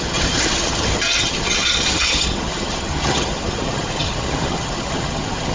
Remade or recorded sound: remade